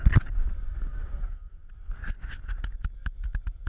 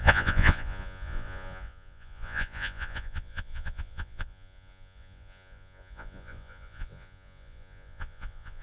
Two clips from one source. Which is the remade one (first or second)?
second